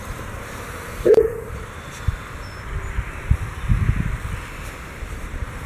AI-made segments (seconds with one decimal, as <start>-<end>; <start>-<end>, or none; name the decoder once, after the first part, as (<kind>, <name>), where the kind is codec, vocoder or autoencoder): 0.0-2.1 (vocoder, BigVGAN v2); 5.1-5.7